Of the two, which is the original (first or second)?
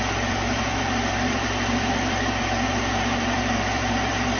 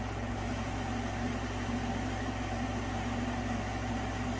second